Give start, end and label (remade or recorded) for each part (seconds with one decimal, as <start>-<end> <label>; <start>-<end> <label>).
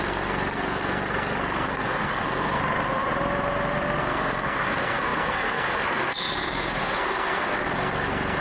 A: 0.0-2.6 remade; 2.6-4.0 recorded; 4.0-8.4 remade